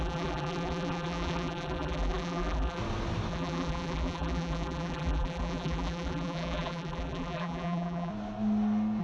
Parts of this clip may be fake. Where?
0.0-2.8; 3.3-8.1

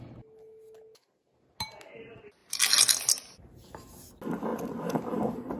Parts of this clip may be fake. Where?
none

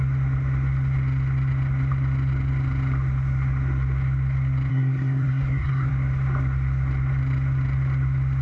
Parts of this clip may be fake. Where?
4.7-5.9

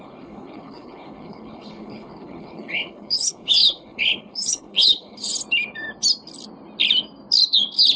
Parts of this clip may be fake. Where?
0.0-5.3

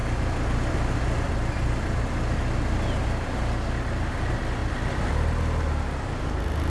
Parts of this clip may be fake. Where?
none